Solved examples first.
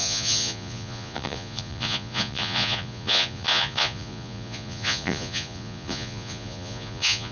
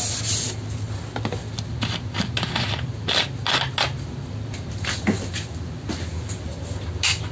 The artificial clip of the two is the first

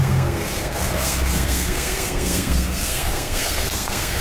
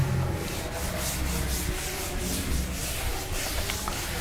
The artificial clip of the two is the first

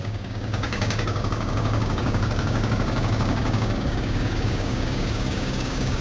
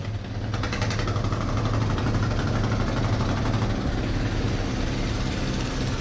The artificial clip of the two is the first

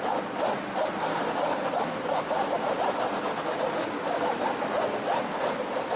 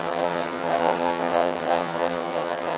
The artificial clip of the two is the second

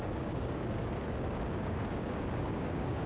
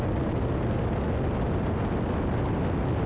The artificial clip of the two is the first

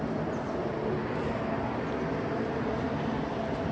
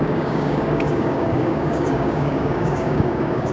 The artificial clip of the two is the second